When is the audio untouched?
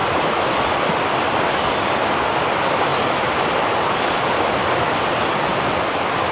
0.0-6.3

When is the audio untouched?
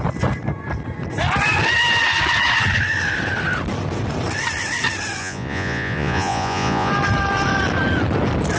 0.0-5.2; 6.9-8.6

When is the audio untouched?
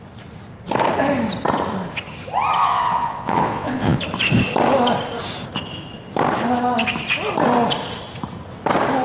0.0-2.6; 4.0-9.0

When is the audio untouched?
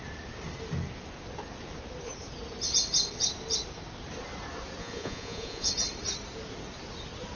0.0-4.8; 5.7-7.4